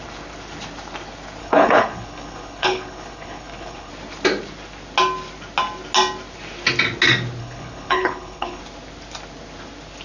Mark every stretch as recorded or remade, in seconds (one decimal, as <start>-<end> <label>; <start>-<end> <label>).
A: 0.0-1.4 recorded; 1.4-3.9 remade; 3.9-7.4 recorded; 7.4-8.6 remade; 8.6-10.0 recorded